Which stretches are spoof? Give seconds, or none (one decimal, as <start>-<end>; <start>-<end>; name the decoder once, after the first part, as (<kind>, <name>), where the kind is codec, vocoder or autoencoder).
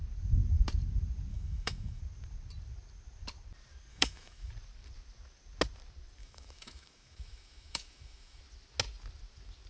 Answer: 1.3-2.0 (autoencoder, DAC-VAE); 3.9-4.5; 6.2-8.4